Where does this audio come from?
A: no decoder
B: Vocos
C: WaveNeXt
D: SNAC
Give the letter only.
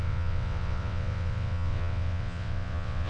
C